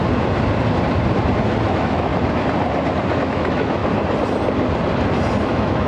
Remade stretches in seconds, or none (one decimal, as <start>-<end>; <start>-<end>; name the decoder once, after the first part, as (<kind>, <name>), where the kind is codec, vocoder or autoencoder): 1.7-2.1 (autoencoder, DAC-VAE); 3.2-3.8; 5.4-5.9